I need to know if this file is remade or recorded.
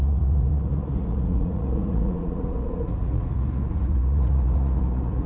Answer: remade